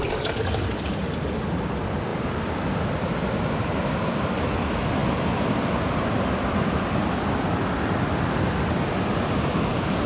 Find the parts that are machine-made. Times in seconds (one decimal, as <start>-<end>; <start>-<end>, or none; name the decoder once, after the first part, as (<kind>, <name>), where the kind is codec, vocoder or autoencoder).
none